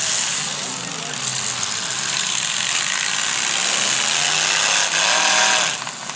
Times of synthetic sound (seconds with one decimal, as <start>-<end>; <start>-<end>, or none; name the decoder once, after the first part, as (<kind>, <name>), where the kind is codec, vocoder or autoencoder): none